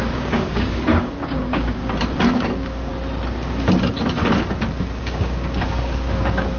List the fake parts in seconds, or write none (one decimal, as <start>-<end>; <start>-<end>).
0.0-1.8; 2.3-2.9; 5.0-6.6